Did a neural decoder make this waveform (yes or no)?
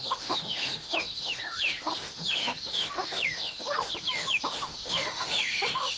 yes